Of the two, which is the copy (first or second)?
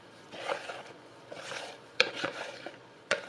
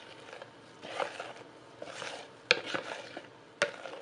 first